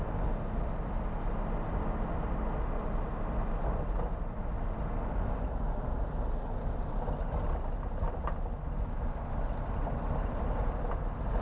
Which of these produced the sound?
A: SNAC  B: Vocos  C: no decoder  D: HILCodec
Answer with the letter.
C